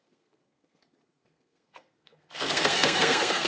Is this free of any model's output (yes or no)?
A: no